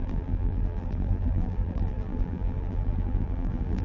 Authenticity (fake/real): fake